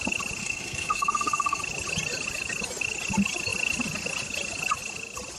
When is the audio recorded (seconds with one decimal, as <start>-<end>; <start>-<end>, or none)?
0.0-0.4; 1.6-5.4